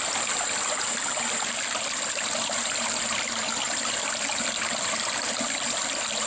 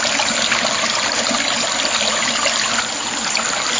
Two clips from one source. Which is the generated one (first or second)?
first